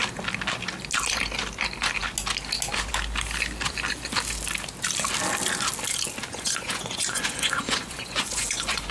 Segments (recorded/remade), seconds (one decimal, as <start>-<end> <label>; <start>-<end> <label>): 0.0-6.3 recorded; 6.3-8.9 remade